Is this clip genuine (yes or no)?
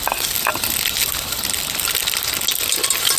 yes